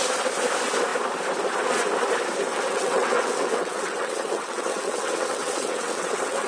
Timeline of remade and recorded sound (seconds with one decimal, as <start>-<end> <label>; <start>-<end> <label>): 0.0-2.5 recorded; 2.5-6.5 remade